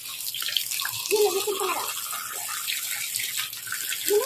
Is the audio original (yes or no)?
yes